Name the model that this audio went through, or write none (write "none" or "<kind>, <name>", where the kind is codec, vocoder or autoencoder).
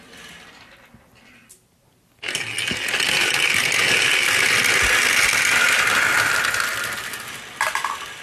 none